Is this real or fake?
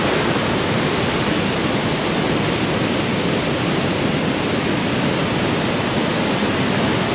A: real